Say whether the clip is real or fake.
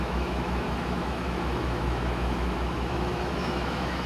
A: fake